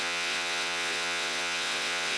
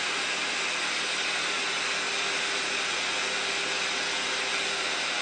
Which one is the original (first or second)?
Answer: second